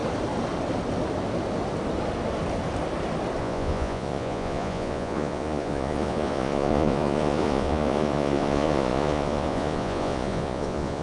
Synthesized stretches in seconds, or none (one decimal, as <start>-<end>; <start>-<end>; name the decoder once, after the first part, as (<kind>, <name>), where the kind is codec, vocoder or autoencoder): 3.4-11.0 (vocoder, Vocos)